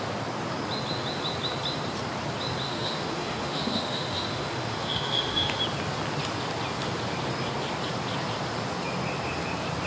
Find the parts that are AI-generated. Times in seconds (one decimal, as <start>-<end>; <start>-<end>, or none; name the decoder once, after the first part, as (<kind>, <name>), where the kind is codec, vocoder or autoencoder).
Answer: 2.7-5.6 (autoencoder, DAC-VAE)